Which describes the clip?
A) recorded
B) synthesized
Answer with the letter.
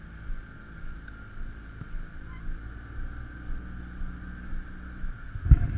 A